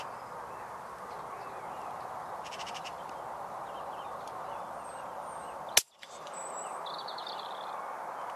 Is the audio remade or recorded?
recorded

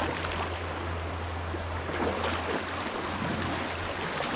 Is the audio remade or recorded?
recorded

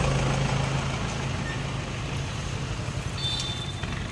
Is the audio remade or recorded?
recorded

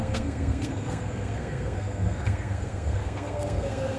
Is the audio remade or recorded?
remade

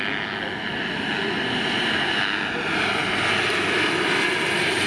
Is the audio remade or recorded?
recorded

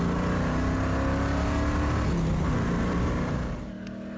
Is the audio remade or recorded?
recorded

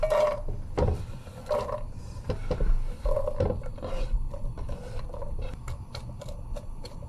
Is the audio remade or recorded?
recorded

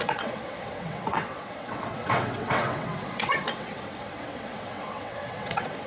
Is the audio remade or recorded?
remade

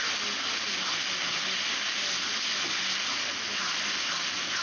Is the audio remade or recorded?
recorded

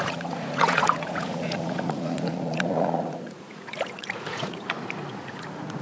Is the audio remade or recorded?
remade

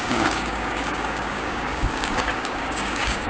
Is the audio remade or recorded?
remade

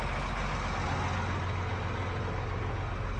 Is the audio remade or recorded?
recorded